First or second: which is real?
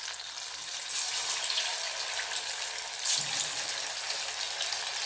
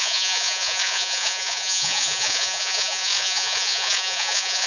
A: first